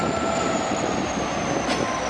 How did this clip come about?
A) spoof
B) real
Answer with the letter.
B